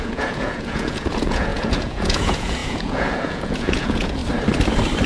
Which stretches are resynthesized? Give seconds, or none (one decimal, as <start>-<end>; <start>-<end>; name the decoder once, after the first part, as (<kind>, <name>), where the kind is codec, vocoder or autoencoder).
0.0-4.2 (vocoder, Vocos)